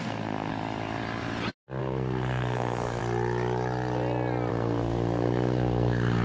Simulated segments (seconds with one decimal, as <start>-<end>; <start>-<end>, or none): 0.0-0.5; 1.8-3.0; 4.5-6.2